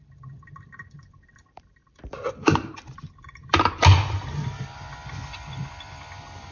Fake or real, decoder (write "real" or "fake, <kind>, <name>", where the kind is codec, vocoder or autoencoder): fake, vocoder, BigVGAN v2